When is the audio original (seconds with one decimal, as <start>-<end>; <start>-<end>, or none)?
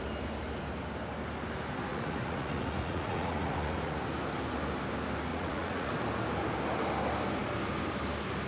0.0-1.9; 4.0-5.3; 5.9-8.5